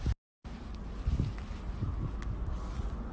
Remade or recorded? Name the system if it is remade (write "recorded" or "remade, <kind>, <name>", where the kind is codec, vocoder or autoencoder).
recorded